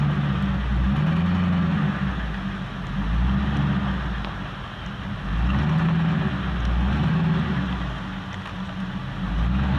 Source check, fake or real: real